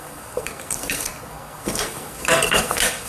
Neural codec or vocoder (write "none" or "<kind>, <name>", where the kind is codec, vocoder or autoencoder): codec, SNAC